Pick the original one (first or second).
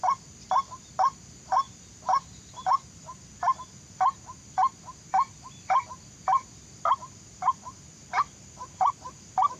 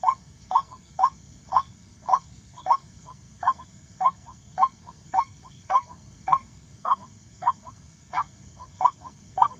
first